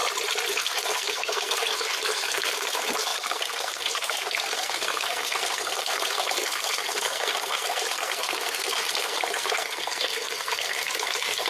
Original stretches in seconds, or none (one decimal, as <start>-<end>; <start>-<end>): 0.0-0.5